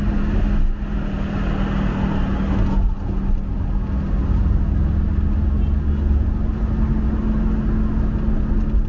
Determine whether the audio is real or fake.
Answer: real